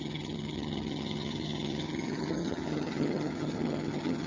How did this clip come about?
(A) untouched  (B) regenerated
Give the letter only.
B